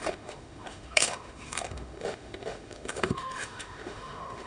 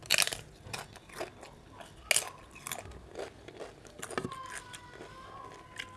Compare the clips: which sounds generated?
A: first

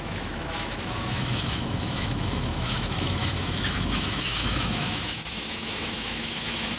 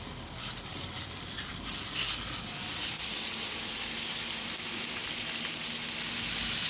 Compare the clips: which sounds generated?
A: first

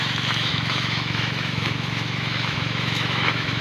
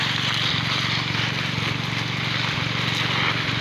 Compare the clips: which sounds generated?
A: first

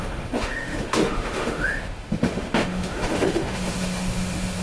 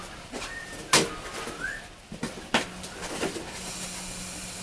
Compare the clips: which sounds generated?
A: first